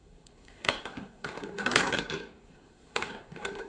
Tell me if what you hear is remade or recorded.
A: remade